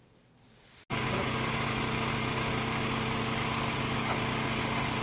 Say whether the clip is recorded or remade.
recorded